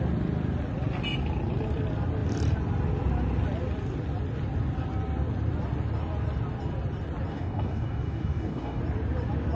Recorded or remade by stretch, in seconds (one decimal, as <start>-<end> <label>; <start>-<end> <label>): 0.0-7.3 recorded; 7.3-8.8 remade; 8.8-9.5 recorded